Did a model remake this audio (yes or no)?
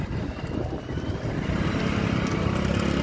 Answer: no